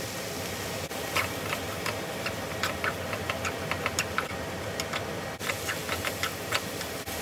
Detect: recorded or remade recorded